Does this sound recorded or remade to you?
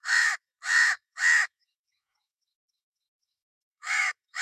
remade